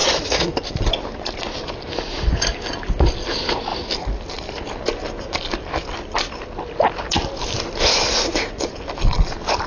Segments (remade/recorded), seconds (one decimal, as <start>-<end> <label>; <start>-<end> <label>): 0.0-9.7 recorded